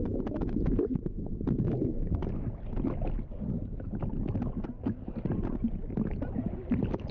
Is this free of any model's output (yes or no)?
yes